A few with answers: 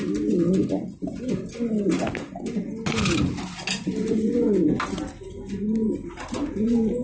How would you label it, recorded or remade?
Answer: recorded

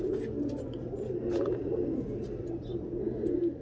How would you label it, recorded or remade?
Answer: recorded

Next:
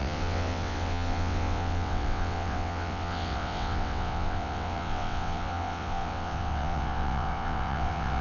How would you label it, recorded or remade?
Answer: remade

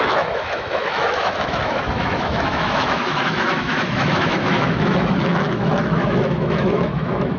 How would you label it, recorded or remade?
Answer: remade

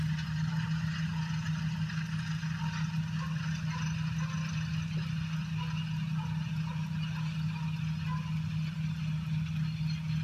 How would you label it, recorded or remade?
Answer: recorded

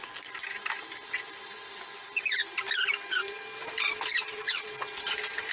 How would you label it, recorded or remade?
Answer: recorded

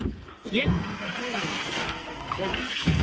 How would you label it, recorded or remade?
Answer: remade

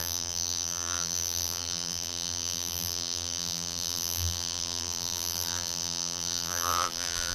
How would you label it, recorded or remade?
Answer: remade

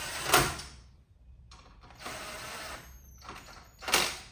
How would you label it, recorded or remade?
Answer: recorded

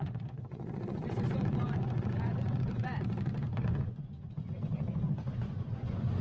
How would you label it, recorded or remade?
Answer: remade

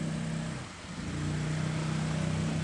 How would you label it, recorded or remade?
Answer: recorded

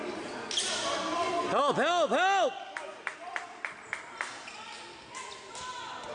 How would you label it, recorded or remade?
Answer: recorded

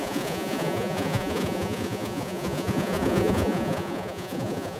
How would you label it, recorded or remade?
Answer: remade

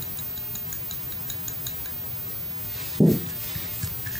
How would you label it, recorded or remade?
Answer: recorded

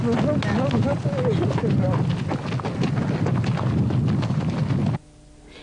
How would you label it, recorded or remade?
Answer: recorded